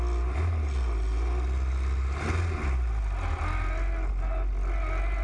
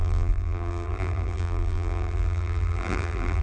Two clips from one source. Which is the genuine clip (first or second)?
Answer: first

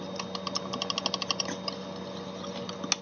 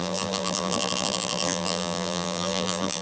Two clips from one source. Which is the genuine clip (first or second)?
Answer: first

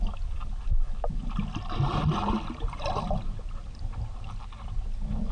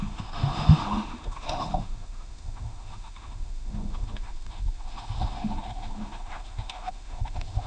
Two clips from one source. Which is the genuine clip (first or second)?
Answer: first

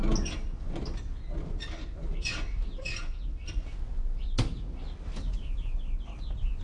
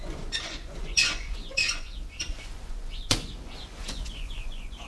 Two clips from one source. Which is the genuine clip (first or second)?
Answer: first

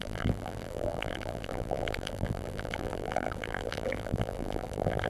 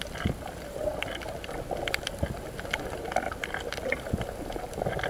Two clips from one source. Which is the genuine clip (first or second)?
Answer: second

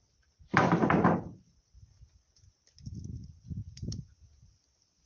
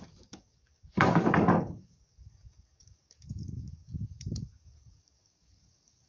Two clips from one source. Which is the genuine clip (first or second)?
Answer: first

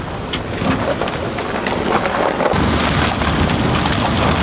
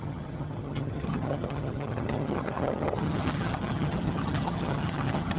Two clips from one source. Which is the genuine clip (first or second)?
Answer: first